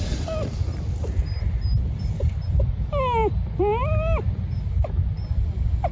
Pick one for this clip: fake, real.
real